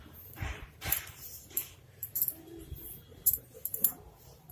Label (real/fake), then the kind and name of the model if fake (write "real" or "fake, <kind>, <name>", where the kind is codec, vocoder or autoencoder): fake, vocoder, BigVGAN v2